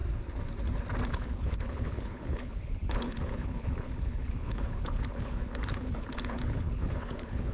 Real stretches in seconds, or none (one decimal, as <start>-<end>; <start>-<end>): 0.0-1.1